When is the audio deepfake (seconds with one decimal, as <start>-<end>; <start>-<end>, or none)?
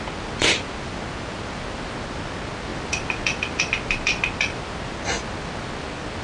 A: none